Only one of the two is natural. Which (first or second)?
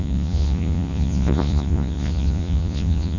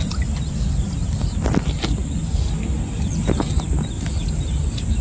second